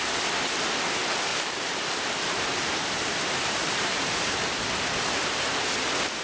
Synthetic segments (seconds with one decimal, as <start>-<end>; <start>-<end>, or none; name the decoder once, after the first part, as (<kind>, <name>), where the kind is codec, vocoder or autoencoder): 1.3-4.5 (vocoder, BigVGAN v2)